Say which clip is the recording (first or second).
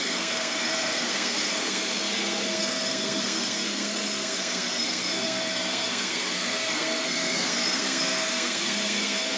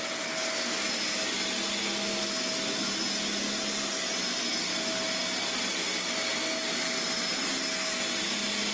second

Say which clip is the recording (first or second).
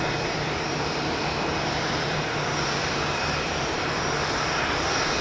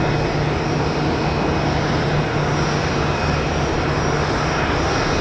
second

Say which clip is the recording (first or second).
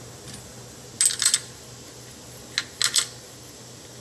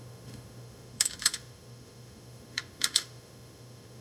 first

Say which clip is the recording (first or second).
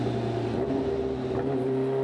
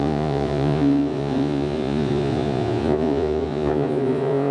first